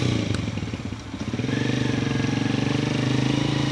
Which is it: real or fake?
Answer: real